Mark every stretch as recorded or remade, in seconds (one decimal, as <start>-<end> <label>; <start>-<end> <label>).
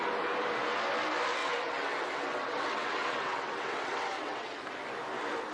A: 0.0-1.4 recorded; 1.4-4.6 remade; 4.6-5.5 recorded